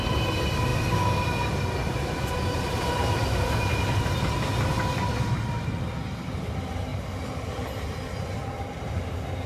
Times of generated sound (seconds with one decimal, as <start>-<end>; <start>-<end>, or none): none